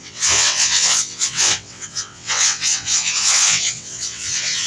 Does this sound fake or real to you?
fake